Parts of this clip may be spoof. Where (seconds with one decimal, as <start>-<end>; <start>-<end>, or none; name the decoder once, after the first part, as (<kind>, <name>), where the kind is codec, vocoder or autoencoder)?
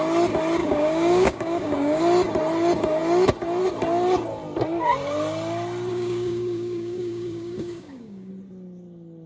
0.6-2.0 (codec, DAC); 5.9-8.3